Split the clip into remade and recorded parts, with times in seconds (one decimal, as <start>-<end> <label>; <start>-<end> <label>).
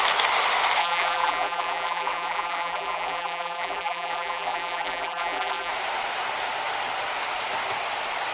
0.0-0.8 recorded; 0.8-5.7 remade; 5.7-8.3 recorded